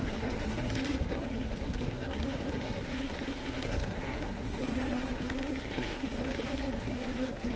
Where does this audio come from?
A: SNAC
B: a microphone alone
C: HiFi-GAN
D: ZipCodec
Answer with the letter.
A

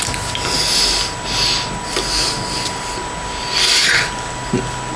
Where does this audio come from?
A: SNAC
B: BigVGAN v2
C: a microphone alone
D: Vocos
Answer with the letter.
C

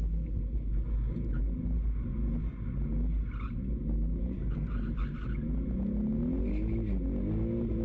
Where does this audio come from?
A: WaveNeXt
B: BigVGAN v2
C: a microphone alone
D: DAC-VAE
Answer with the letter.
C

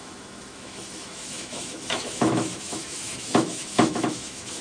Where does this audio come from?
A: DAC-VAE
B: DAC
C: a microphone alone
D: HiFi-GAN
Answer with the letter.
A